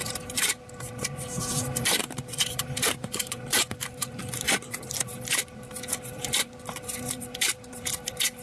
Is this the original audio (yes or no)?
no